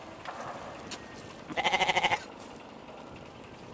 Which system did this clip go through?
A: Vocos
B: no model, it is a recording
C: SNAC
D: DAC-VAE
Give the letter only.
B